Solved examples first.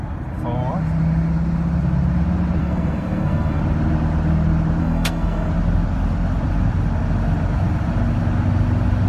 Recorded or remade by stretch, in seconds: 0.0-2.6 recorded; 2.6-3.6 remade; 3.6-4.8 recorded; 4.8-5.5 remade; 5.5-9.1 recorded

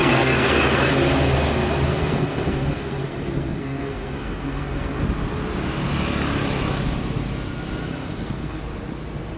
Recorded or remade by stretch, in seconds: 0.0-0.9 remade; 0.9-1.9 recorded; 1.9-5.0 remade; 5.0-7.8 recorded; 7.8-8.6 remade; 8.6-9.4 recorded

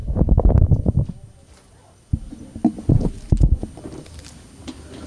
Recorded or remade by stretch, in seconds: 0.0-5.1 recorded